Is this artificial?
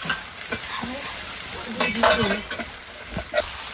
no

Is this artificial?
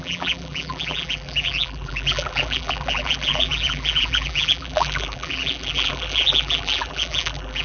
yes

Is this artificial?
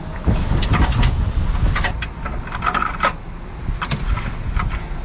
no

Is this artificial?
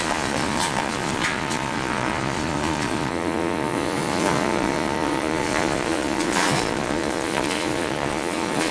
yes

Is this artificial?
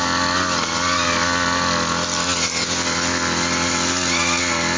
no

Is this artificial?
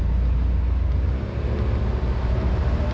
no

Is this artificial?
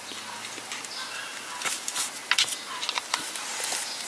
no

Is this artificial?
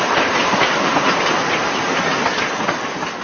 no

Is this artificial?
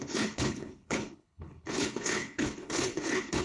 yes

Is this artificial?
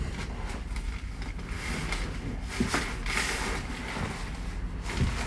no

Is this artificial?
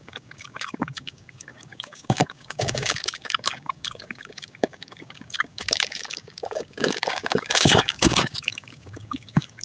yes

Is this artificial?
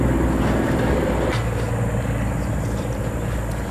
no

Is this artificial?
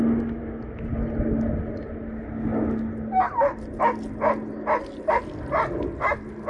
no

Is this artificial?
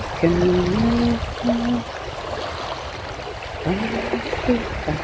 no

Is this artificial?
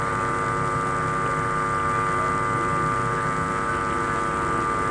no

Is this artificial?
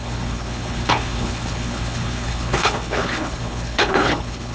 yes